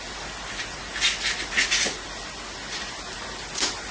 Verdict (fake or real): real